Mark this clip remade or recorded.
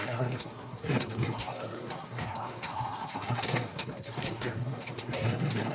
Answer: remade